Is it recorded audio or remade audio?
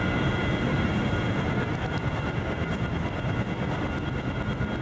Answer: recorded